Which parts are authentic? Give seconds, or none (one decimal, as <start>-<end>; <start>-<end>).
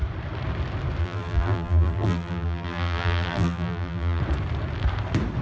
0.0-1.0; 4.2-5.4